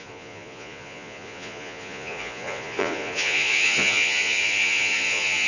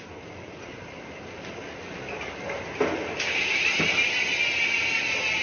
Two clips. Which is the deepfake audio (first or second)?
first